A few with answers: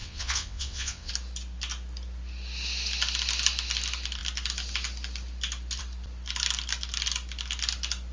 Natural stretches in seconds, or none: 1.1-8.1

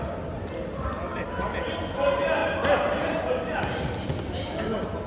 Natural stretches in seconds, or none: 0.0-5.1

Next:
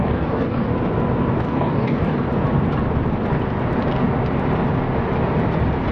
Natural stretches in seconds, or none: 0.7-1.4; 2.3-5.9

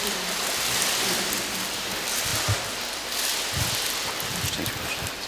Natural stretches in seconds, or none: 0.0-5.3

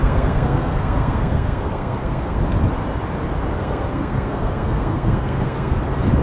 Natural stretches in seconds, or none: 2.4-3.5; 5.8-6.2

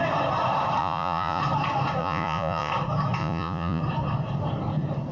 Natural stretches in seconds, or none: 0.0-0.8; 1.4-2.0; 2.7-3.2; 3.8-5.1

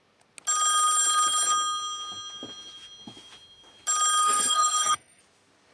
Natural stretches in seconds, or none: 0.0-4.2; 5.2-5.7